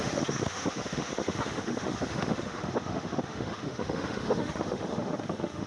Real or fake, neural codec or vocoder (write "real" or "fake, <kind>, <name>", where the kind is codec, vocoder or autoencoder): fake, autoencoder, DAC-VAE